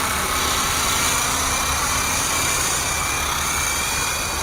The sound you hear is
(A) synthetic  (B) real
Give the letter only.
B